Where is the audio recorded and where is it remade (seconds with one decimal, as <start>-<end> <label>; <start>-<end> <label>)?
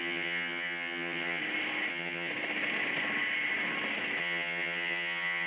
0.0-1.4 remade; 1.4-1.9 recorded; 1.9-2.3 remade; 2.3-4.2 recorded; 4.2-5.5 remade